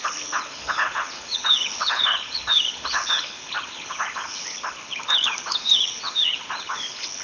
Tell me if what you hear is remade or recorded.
remade